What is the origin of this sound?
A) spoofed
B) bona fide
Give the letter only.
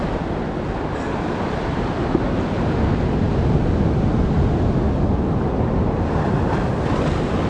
B